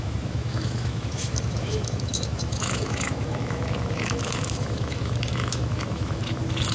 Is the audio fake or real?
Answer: fake